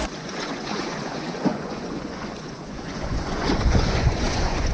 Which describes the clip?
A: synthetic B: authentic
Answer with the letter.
A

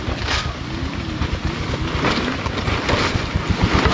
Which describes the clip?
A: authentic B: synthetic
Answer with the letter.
A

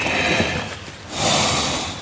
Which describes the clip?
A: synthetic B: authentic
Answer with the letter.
B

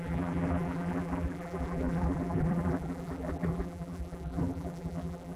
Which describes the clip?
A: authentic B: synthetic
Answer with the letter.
B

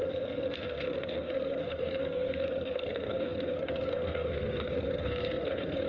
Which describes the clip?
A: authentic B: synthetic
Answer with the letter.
B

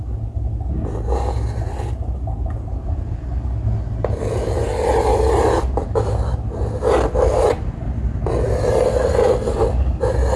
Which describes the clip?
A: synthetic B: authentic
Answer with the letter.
B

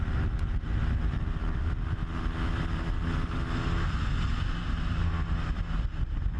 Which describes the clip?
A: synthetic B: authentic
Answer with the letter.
B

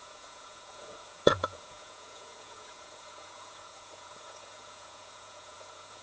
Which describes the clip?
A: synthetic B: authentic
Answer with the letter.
A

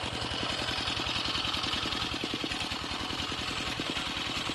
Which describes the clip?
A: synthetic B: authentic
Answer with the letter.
B